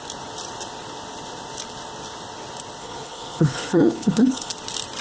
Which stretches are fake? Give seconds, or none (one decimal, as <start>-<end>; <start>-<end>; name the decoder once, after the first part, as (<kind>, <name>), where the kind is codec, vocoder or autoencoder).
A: 2.8-4.5 (codec, HILCodec)